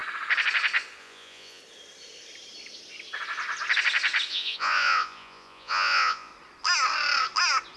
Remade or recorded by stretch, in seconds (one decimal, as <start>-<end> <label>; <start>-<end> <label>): 0.0-1.0 recorded; 1.0-1.6 remade; 1.6-4.3 recorded; 4.3-6.3 remade; 6.3-7.8 recorded

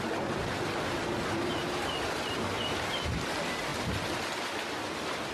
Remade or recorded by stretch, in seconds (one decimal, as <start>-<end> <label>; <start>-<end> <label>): 0.0-5.3 recorded

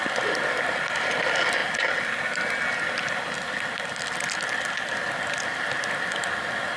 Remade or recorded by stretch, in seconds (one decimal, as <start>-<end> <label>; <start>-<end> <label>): 0.0-6.8 recorded

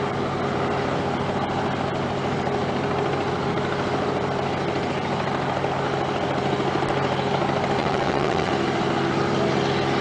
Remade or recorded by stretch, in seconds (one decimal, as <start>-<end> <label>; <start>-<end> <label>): 0.0-7.8 recorded; 7.8-8.5 remade; 8.5-10.0 recorded